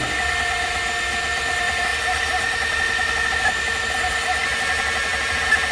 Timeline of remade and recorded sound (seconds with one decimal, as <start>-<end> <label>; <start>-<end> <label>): 0.0-5.7 recorded